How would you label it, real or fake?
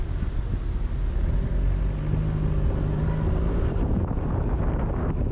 real